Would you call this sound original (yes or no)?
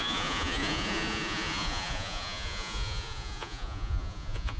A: no